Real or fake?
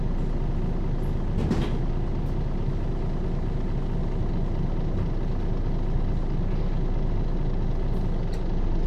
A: real